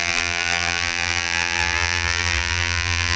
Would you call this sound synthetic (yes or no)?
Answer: yes